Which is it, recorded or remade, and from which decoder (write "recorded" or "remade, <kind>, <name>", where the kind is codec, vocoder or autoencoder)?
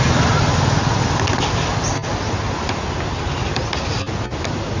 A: recorded